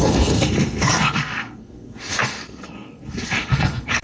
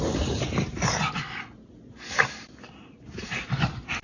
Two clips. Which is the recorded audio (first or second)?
second